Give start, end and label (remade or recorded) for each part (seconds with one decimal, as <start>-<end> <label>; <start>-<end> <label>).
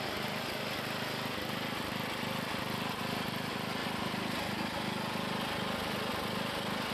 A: 0.0-6.9 recorded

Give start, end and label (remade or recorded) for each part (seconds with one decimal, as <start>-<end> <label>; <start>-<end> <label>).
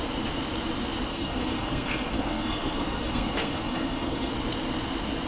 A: 0.0-1.1 recorded; 1.1-4.3 remade; 4.3-5.3 recorded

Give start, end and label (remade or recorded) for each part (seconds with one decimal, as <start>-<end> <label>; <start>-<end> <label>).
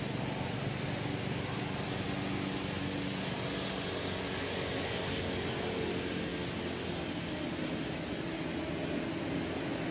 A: 0.0-9.9 recorded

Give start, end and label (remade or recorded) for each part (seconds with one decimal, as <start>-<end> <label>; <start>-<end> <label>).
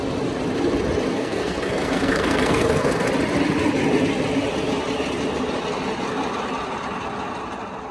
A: 0.0-1.1 recorded; 1.1-3.1 remade; 3.1-7.9 recorded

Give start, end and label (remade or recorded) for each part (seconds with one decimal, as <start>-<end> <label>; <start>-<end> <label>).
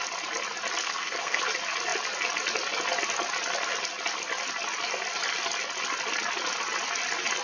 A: 0.0-0.8 recorded; 0.8-1.4 remade; 1.4-7.4 recorded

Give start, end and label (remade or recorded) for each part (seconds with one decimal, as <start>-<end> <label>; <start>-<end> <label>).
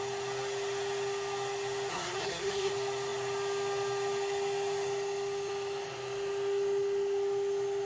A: 0.0-1.9 recorded; 1.9-2.7 remade; 2.7-7.9 recorded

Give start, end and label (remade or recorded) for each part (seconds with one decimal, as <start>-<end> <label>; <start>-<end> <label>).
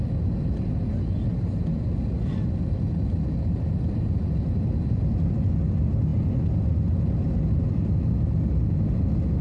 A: 0.0-9.4 recorded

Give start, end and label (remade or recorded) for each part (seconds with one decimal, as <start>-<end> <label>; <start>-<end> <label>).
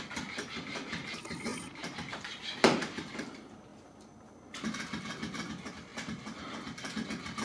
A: 0.0-7.4 recorded